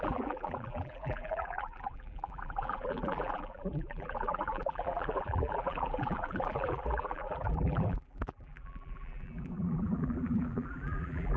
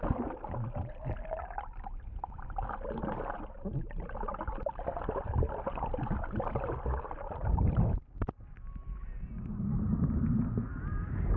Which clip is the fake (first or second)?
first